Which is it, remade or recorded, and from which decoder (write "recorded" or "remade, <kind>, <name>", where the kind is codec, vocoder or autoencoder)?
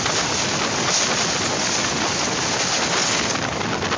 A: recorded